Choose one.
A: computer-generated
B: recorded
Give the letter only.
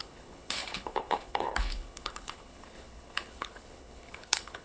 A